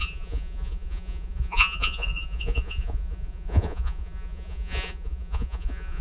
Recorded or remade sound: remade